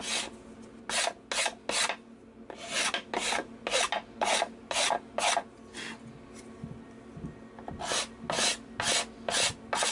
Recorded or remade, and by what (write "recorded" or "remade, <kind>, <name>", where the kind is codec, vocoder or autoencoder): recorded